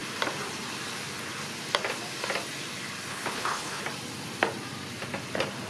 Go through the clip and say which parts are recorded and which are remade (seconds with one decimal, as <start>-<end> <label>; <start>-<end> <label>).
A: 0.0-3.1 recorded; 3.1-3.8 remade; 3.8-5.7 recorded